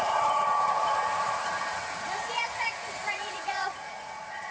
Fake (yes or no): yes